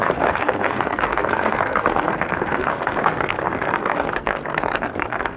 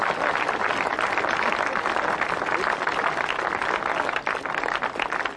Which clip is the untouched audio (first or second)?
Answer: second